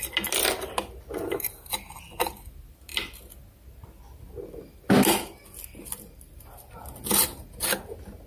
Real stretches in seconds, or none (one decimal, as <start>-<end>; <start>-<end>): 0.0-8.3